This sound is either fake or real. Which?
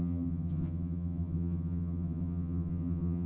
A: fake